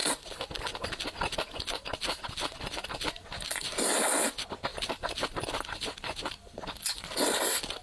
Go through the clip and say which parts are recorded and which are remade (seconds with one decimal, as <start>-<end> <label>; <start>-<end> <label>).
0.0-7.8 recorded